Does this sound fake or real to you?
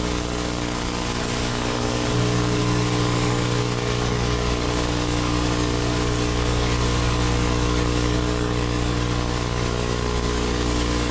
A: fake